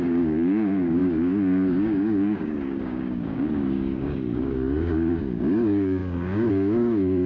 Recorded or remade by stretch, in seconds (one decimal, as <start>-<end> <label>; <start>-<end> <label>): 0.0-7.3 remade